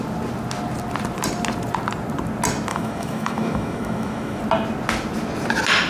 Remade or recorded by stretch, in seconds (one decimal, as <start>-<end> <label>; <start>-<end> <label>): 0.0-2.7 recorded; 2.7-4.4 remade; 4.4-5.9 recorded